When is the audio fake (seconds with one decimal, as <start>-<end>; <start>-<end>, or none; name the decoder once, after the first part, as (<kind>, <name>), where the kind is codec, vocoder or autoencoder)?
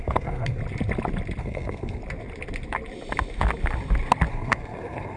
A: 0.0-0.6 (codec, SNAC); 1.4-2.0; 4.3-5.2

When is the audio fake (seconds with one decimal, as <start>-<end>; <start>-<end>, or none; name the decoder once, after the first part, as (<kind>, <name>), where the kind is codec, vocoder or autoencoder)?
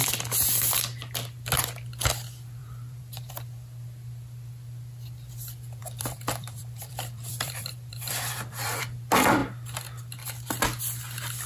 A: 2.6-3.3 (vocoder, BigVGAN v2); 5.8-8.8